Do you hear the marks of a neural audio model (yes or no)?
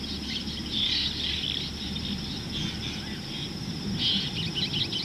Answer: no